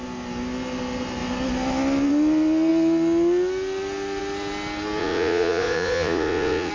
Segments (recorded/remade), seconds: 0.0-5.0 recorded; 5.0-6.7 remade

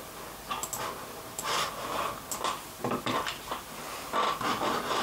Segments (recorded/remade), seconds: 0.0-5.0 recorded

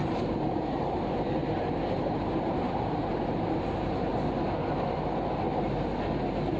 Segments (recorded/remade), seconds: 0.0-4.1 remade; 4.1-6.6 recorded

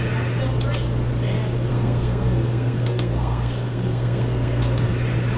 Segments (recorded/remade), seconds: 0.0-1.7 recorded; 1.7-4.9 remade; 4.9-5.4 recorded

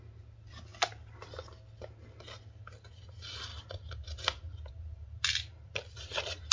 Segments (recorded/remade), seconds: 0.0-0.7 recorded; 0.7-1.8 remade; 1.8-3.5 recorded; 3.5-4.7 remade; 4.7-6.5 recorded

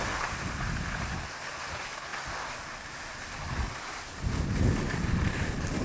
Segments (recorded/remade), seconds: 0.0-5.8 recorded

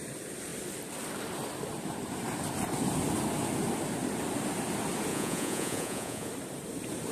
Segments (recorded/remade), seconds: 0.0-5.1 recorded; 5.1-6.3 remade; 6.3-7.1 recorded